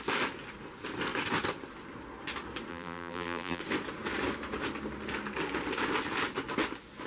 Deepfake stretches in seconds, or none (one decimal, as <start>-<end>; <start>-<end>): 2.7-3.6